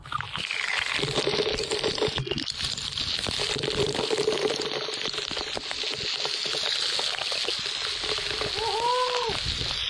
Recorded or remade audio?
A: recorded